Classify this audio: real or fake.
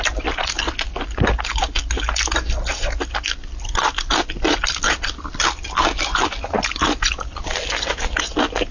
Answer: real